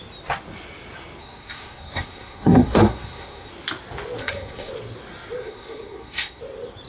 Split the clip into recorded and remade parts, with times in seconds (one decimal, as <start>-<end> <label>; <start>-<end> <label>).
0.0-1.2 recorded; 1.2-3.5 remade; 3.5-4.2 recorded; 4.2-4.7 remade; 4.7-5.4 recorded; 5.4-6.4 remade; 6.4-6.9 recorded